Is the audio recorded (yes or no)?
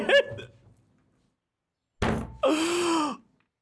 yes